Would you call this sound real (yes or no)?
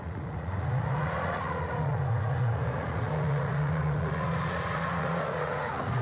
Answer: no